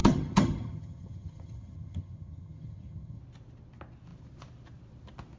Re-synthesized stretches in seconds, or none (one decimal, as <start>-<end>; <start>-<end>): 0.0-3.2